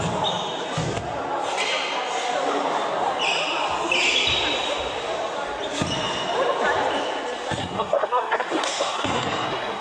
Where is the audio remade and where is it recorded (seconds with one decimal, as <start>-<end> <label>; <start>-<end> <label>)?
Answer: 0.0-7.6 recorded; 7.6-9.8 remade